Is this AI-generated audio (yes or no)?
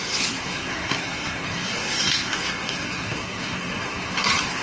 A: yes